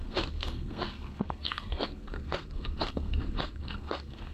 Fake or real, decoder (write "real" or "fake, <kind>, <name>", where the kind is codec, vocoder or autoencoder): fake, codec, SNAC